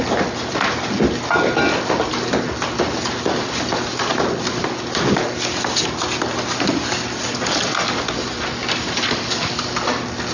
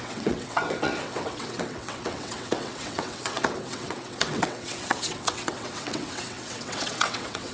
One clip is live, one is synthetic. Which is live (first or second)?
first